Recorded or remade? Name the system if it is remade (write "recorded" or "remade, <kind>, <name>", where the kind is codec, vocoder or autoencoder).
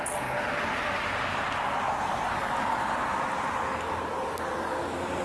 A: recorded